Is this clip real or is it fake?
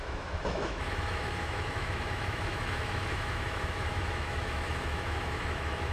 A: fake